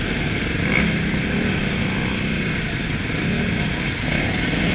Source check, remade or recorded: recorded